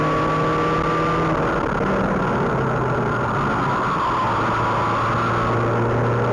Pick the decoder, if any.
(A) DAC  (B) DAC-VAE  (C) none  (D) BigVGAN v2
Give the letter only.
C